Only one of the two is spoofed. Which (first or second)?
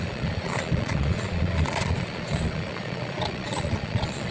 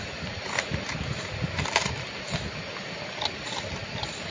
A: first